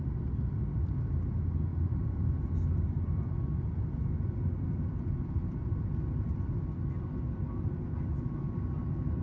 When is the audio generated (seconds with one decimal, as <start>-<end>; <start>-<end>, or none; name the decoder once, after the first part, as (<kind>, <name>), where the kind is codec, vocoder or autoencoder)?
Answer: 1.7-5.8 (vocoder, BigVGAN v2)